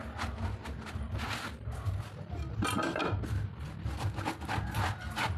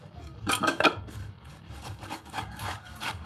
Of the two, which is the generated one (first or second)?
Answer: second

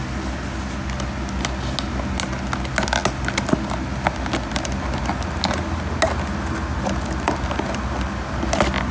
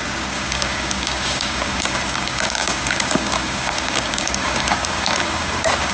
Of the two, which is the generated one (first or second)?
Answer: second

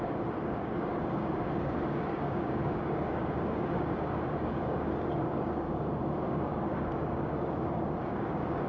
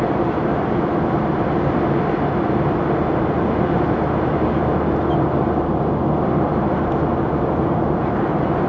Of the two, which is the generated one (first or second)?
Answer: first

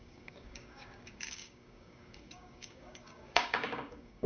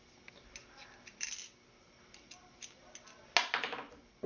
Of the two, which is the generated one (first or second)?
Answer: first